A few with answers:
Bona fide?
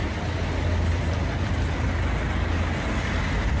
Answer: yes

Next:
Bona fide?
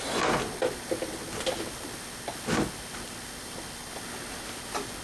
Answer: yes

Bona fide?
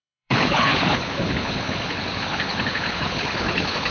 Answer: no